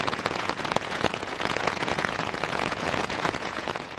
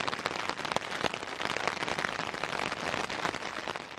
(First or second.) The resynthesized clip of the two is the first